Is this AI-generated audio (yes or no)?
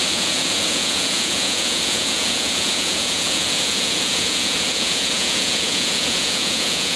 yes